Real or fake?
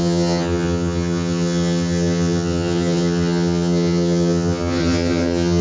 fake